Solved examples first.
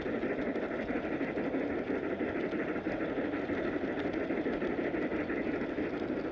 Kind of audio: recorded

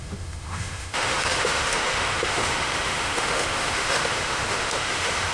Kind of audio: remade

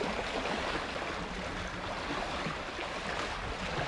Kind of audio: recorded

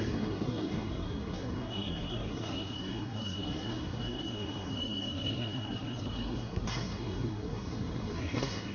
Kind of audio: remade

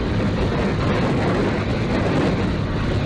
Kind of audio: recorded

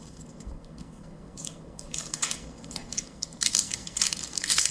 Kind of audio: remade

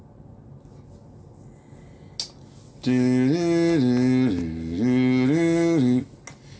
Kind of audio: recorded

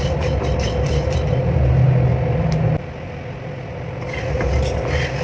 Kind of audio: recorded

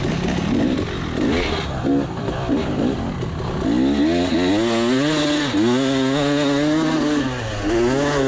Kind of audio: recorded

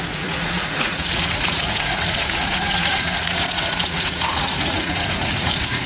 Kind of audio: remade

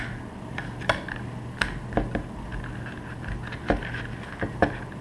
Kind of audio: recorded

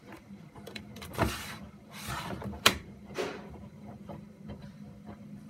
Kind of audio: remade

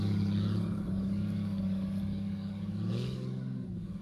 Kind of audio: remade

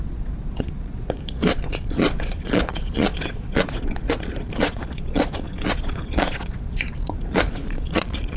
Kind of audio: remade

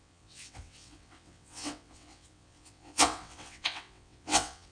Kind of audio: remade